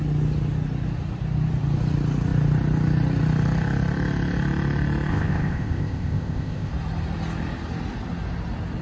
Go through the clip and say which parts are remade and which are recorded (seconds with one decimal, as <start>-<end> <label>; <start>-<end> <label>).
0.0-5.1 recorded; 5.1-6.7 remade; 6.7-8.8 recorded